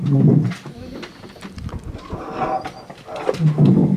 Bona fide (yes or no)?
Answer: yes